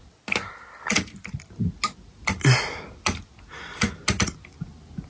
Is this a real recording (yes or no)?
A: yes